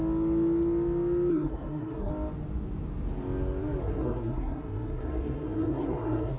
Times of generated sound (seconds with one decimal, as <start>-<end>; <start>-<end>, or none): 1.3-2.1; 3.8-6.4